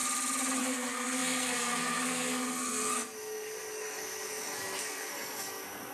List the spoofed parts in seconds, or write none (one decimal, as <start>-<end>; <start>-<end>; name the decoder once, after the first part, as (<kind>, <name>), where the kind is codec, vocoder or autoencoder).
0.6-5.9 (codec, SNAC)